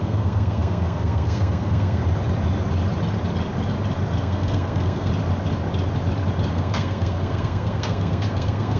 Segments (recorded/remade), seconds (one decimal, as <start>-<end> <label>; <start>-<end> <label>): 0.0-2.0 remade; 2.0-4.2 recorded; 4.2-5.1 remade; 5.1-6.5 recorded; 6.5-8.8 remade